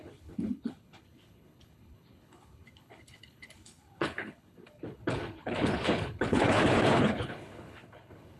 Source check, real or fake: fake